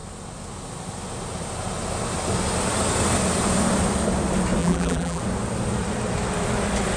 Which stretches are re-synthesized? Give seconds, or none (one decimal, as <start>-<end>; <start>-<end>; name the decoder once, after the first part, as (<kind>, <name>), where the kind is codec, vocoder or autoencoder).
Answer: 4.6-5.2 (vocoder, BigVGAN v2)